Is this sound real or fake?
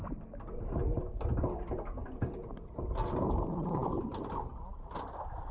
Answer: real